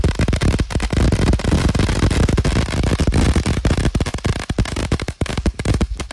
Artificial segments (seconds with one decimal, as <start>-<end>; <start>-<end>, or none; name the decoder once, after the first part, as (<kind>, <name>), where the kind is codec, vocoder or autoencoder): 4.8-6.1 (codec, DAC)